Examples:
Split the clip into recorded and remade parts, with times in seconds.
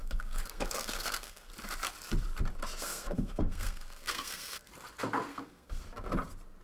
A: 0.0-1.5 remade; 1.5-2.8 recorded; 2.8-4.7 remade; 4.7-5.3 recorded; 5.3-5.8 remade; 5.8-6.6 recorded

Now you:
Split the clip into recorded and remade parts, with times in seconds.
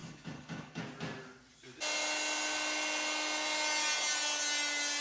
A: 0.0-0.8 remade; 0.8-5.0 recorded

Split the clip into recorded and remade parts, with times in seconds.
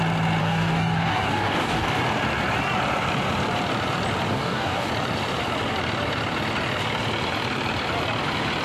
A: 0.0-0.4 recorded; 0.4-2.0 remade; 2.0-4.3 recorded; 4.3-4.9 remade; 4.9-8.6 recorded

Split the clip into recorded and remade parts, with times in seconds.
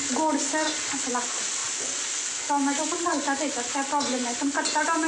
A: 0.0-5.1 recorded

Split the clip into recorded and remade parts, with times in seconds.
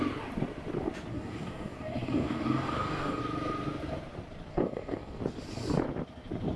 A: 0.0-1.1 recorded; 1.1-3.2 remade; 3.2-4.5 recorded; 4.5-5.2 remade; 5.2-6.6 recorded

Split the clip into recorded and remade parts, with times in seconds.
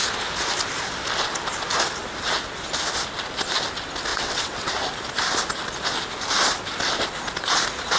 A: 0.0-4.1 recorded; 4.1-4.7 remade; 4.7-8.0 recorded